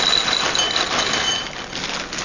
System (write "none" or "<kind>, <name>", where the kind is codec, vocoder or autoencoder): none